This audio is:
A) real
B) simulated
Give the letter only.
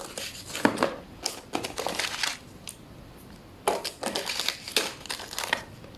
A